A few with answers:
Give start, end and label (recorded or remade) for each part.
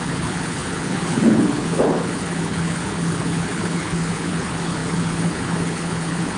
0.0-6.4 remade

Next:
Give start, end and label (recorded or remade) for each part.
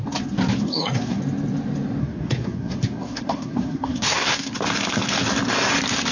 0.0-0.6 recorded; 0.6-1.2 remade; 1.2-2.0 recorded; 2.0-4.5 remade; 4.5-6.1 recorded